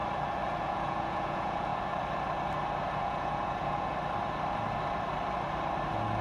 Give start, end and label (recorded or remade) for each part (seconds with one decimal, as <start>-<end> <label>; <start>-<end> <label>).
0.0-0.6 recorded; 0.6-1.7 remade; 1.7-3.0 recorded; 3.0-3.9 remade; 3.9-6.2 recorded